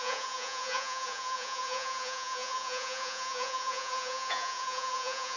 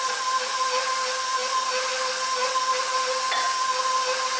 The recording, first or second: second